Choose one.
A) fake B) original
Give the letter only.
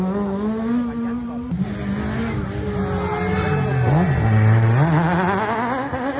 B